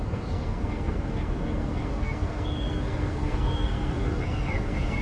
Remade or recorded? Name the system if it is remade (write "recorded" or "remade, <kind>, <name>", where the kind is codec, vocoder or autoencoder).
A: remade, codec, SNAC